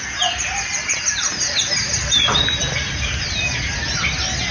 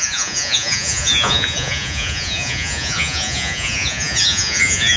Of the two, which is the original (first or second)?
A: first